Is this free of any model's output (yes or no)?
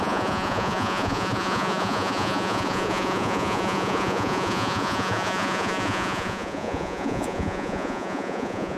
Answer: no